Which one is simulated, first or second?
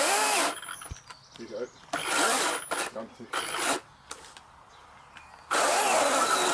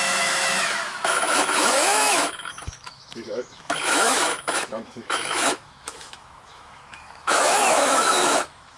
second